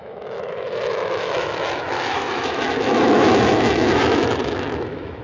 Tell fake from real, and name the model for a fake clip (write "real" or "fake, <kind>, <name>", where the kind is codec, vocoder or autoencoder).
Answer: fake, autoencoder, DAC-VAE